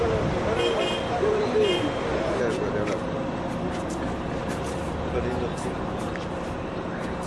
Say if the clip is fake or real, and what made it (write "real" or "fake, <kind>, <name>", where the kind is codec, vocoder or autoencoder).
real